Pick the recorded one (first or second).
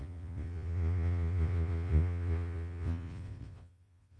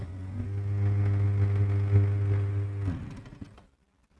second